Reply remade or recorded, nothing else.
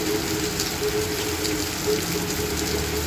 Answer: recorded